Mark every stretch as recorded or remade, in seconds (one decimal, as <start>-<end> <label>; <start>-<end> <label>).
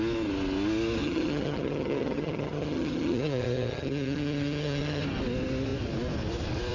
0.0-1.0 recorded; 1.0-5.0 remade; 5.0-6.7 recorded